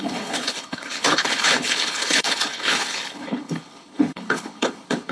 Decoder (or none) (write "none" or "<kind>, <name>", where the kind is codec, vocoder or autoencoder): codec, HILCodec